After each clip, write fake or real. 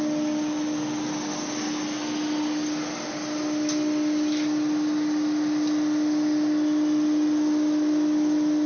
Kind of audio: real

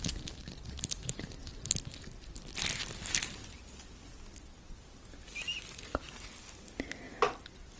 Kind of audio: real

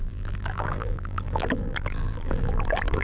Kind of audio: fake